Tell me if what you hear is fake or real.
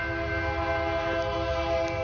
real